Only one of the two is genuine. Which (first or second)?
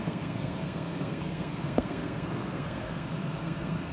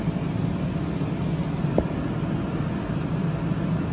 second